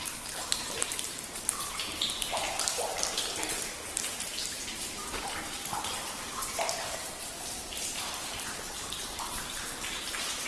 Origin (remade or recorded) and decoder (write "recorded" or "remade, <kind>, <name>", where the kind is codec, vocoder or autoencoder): remade, vocoder, BigVGAN v2